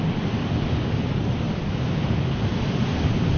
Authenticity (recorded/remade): recorded